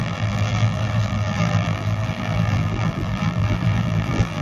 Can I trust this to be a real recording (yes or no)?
no